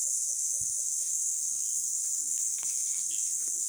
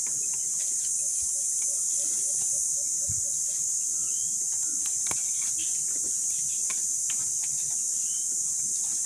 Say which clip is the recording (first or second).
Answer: second